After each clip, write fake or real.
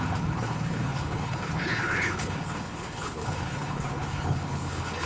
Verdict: fake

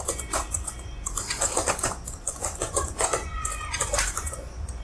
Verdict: fake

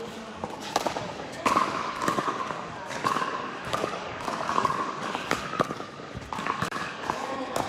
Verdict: fake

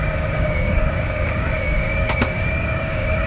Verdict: fake